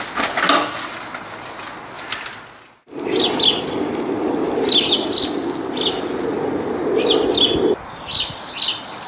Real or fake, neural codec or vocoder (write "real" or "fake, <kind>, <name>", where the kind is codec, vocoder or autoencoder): real